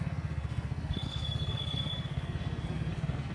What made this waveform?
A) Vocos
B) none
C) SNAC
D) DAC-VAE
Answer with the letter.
C